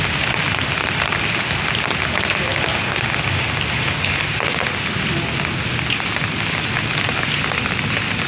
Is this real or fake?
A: real